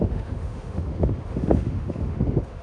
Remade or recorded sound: remade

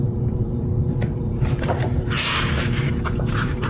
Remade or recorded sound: remade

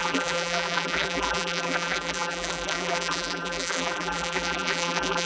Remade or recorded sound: remade